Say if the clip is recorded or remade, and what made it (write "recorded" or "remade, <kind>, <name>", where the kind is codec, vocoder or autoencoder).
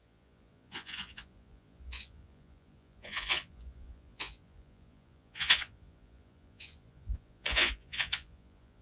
remade, vocoder, Vocos